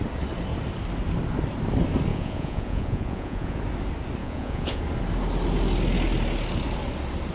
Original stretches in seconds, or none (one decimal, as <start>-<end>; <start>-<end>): 0.0-2.1; 3.6-4.2; 4.8-7.3